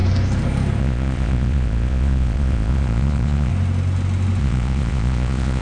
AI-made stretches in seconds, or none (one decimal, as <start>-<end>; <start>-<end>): 0.8-3.5; 4.4-5.6